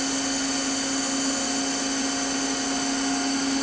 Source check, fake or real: real